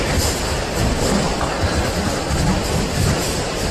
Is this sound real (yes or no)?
no